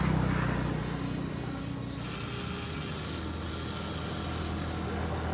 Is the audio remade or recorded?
recorded